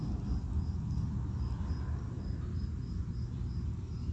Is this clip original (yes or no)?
yes